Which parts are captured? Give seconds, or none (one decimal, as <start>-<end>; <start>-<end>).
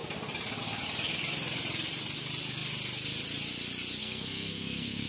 0.0-4.0